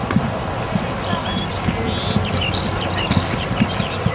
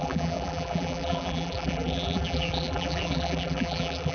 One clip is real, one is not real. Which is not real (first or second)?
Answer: second